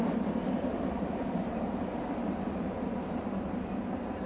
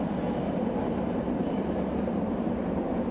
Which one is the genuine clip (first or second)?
second